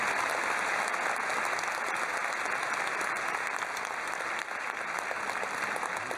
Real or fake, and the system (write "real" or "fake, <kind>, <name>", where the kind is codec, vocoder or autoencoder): real